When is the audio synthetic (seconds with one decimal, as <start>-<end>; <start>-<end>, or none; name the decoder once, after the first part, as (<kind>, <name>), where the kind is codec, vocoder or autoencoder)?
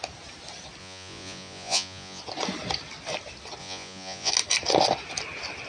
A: 0.8-2.2 (vocoder, Vocos); 3.6-4.3